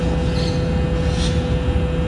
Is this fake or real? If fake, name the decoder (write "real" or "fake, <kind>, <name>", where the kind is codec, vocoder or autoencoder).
real